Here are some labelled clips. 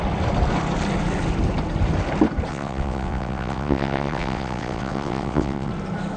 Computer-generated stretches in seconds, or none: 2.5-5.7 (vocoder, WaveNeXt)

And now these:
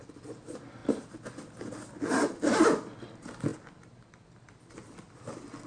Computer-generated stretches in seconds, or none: none

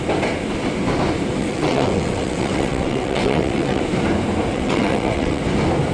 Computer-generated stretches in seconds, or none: 1.4-3.8 (vocoder, WaveNeXt); 4.5-5.4

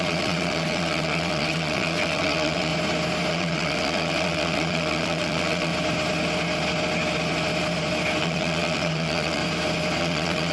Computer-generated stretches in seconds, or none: 0.0-2.7 (vocoder, WaveNeXt); 3.3-5.7; 8.2-9.4; 10.0-10.5

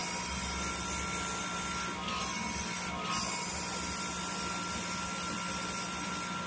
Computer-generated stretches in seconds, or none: none

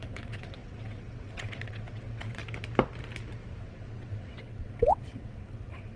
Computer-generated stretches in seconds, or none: 0.0-2.4 (vocoder, WaveNeXt); 3.6-6.0

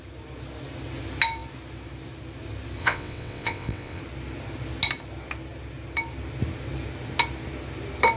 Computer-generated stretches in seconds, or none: 2.8-4.0 (vocoder, WaveNeXt)